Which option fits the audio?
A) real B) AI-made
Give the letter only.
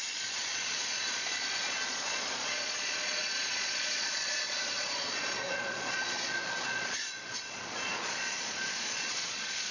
B